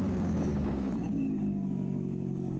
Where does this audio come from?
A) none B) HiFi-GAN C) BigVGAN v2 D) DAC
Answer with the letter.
D